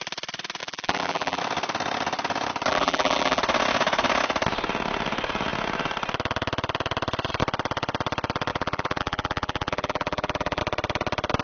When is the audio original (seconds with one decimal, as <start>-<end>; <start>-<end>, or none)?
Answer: 0.0-0.6; 1.4-2.7; 3.4-8.5; 10.6-11.4